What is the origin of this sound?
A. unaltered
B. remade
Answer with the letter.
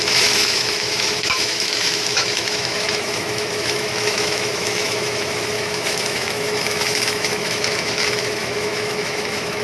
B